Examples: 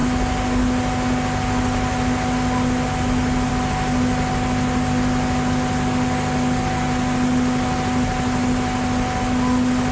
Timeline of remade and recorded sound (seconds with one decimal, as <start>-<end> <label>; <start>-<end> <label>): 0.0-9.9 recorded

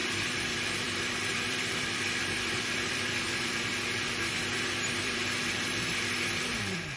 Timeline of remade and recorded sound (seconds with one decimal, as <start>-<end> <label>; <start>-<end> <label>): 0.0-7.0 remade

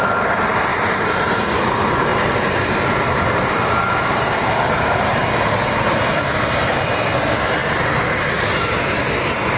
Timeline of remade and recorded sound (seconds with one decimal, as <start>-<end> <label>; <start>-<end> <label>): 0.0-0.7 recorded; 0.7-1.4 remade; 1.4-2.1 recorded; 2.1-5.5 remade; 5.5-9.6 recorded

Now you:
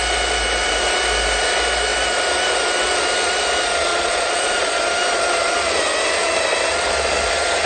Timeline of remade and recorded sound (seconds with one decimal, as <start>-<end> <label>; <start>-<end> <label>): 0.0-3.9 recorded; 3.9-4.8 remade; 4.8-7.7 recorded

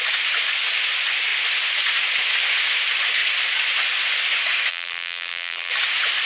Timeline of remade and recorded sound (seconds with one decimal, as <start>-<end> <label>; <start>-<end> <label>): 0.0-4.7 recorded; 4.7-5.7 remade; 5.7-6.3 recorded

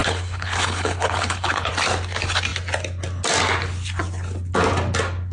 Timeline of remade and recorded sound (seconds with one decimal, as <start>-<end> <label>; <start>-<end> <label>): 0.0-1.7 remade; 1.7-5.3 recorded

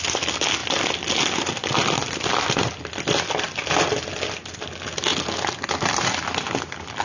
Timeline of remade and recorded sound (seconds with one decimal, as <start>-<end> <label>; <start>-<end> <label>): 0.0-7.0 recorded

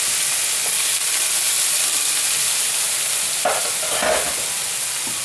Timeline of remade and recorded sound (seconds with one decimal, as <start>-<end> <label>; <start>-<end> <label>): 0.0-5.2 recorded